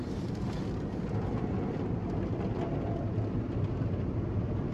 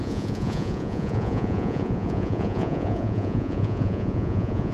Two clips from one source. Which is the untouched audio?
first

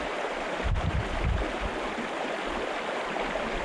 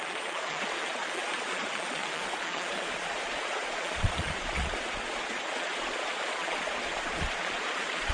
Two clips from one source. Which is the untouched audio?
first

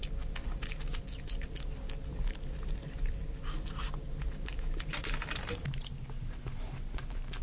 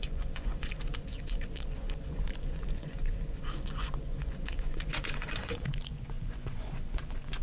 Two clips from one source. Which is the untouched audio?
first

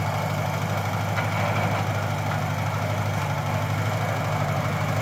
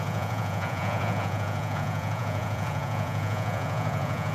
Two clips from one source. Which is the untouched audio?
first